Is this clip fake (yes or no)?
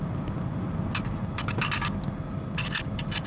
no